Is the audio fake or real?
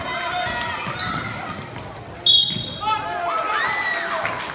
real